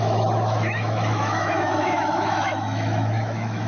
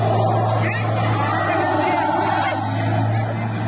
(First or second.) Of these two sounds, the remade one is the first